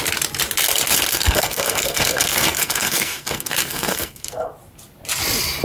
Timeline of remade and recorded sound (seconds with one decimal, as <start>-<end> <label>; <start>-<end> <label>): 0.0-1.1 recorded; 1.1-4.5 remade; 4.5-5.6 recorded